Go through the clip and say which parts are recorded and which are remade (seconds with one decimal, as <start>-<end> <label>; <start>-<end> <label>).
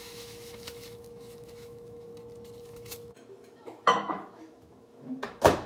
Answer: 0.0-2.1 remade; 2.1-2.6 recorded; 2.6-5.7 remade